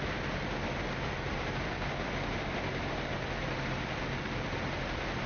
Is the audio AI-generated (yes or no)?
no